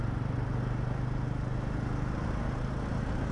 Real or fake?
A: real